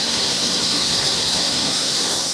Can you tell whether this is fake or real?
fake